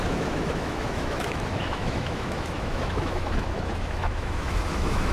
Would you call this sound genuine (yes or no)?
no